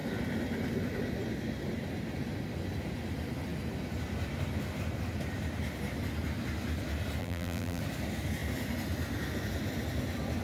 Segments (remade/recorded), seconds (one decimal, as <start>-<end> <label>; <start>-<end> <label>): 0.0-7.2 recorded; 7.2-7.8 remade; 7.8-10.4 recorded